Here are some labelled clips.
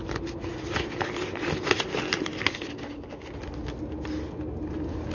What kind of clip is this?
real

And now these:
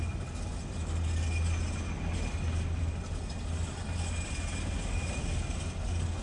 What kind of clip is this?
real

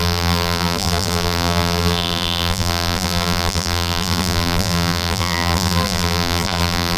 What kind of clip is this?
fake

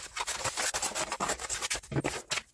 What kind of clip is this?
real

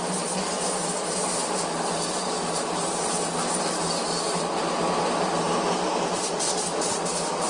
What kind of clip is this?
real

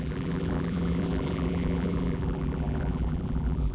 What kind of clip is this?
fake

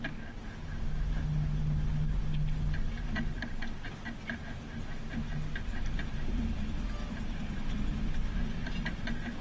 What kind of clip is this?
real